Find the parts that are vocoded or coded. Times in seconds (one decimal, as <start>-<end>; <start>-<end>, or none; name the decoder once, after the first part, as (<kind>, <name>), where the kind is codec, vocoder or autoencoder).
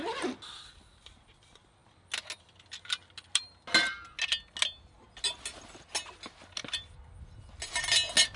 none